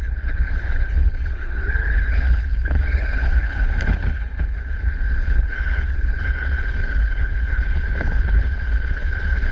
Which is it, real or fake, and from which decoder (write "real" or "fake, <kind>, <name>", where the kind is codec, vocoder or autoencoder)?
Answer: fake, codec, HILCodec